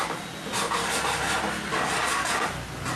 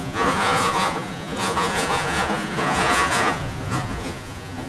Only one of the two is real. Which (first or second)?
first